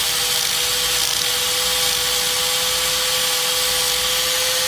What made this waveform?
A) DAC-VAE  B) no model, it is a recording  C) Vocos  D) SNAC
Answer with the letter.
B